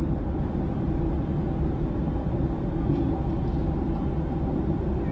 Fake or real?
real